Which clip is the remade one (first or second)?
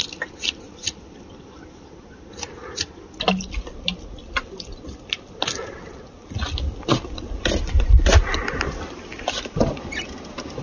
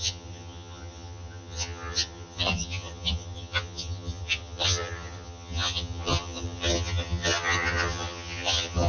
second